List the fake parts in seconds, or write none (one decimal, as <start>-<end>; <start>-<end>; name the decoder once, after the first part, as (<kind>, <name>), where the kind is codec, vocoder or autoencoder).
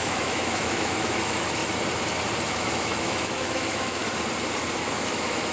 0.0-1.6 (autoencoder, DAC-VAE); 2.5-4.0; 4.9-5.5